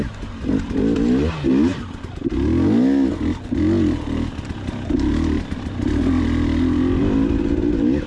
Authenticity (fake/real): real